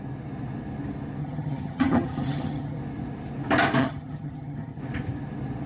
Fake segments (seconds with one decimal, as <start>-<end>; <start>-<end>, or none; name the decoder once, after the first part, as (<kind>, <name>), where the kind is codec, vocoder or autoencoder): 1.2-2.8 (vocoder, HiFi-GAN); 3.8-4.8